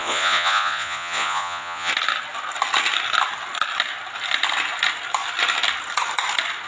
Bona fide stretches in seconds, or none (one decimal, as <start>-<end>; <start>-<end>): 1.9-6.7